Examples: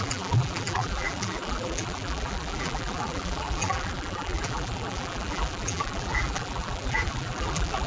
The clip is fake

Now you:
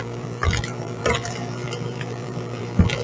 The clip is fake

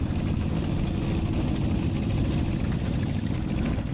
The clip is real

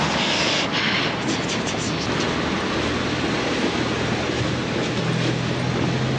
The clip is real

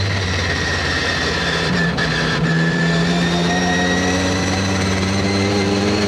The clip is fake